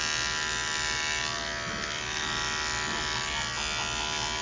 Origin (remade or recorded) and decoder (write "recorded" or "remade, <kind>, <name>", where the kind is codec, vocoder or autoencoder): recorded